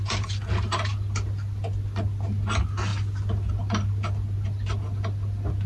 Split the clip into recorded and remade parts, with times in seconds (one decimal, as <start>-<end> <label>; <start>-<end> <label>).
0.0-5.7 recorded